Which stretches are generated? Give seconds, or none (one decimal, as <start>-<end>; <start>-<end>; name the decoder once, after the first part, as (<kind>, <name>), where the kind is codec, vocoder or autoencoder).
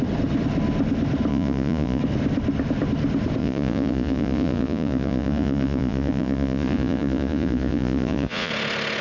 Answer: 1.3-2.0 (vocoder, Vocos); 3.4-8.5